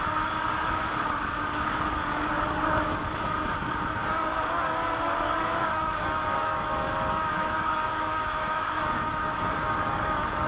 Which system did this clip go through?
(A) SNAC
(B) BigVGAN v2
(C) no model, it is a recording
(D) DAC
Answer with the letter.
D